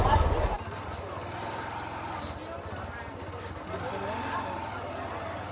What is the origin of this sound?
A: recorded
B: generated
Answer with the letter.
A